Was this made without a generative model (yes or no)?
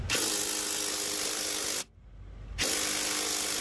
yes